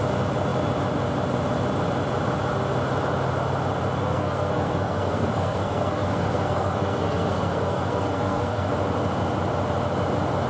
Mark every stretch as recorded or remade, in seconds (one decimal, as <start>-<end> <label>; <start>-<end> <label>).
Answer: 0.0-4.0 recorded; 4.0-8.7 remade; 8.7-10.5 recorded